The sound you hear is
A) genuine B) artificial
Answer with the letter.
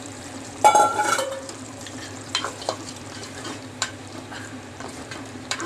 B